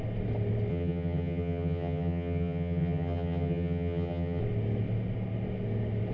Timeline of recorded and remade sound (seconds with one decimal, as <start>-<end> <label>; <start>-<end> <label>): 0.0-0.7 recorded; 0.7-4.4 remade; 4.4-6.1 recorded